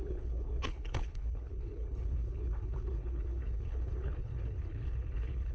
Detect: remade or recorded remade